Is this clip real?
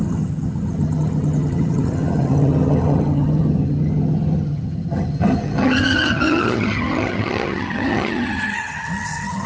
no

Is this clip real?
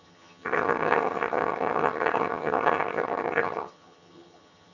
no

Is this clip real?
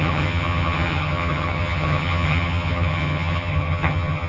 no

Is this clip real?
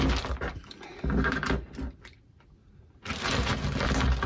yes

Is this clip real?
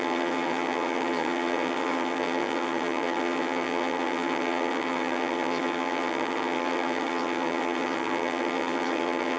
no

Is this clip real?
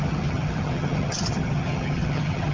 no